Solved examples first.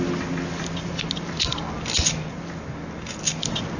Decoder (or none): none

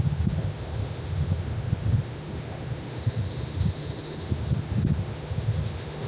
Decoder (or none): autoencoder, DAC-VAE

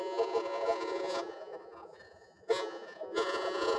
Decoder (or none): vocoder, Vocos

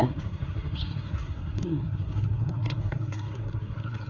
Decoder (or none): codec, SNAC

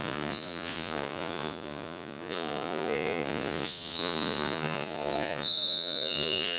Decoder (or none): vocoder, Vocos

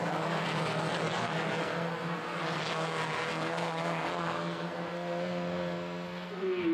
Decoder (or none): codec, SNAC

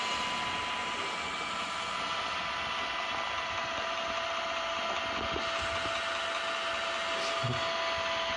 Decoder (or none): none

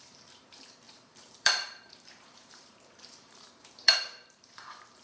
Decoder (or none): vocoder, BigVGAN v2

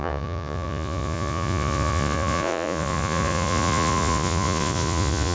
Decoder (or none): vocoder, Vocos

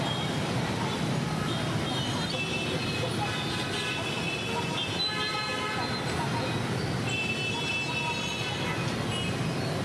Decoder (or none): none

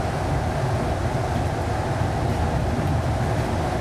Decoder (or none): none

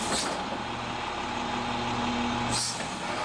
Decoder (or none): none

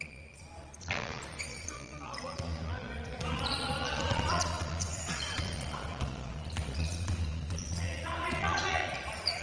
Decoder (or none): vocoder, Vocos